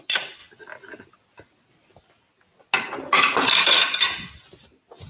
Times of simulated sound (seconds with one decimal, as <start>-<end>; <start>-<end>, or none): none